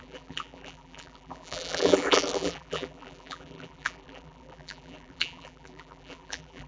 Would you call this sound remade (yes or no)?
yes